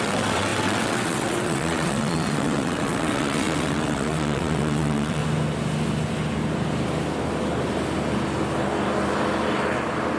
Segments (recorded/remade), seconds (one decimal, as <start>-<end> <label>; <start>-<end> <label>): 0.0-5.2 remade; 5.2-10.2 recorded